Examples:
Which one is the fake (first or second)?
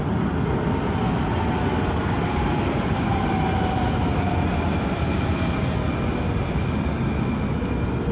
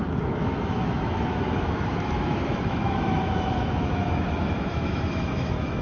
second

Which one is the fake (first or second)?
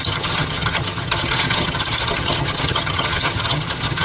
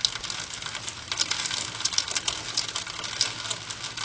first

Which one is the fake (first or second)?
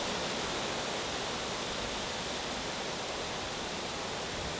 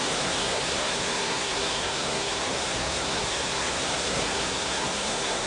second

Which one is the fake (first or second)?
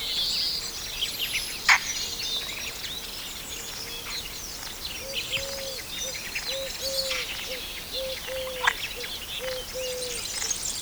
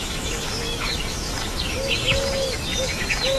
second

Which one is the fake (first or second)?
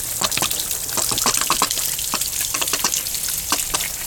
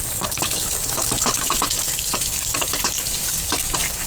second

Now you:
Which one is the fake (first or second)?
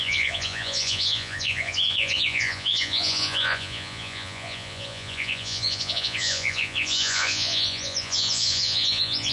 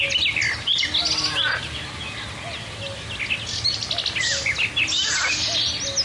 first